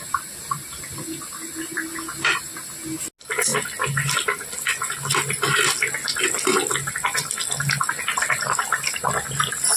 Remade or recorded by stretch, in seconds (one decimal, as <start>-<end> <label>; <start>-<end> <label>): 0.0-9.8 recorded